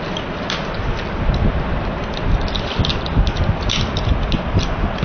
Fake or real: real